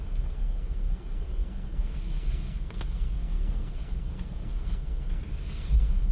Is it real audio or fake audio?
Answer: fake